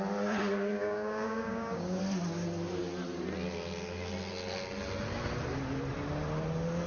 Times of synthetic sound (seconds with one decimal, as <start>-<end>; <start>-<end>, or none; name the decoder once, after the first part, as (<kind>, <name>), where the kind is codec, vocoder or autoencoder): 0.7-2.0 (codec, DAC)